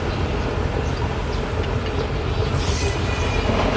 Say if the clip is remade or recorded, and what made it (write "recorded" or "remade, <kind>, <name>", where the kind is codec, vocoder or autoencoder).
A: recorded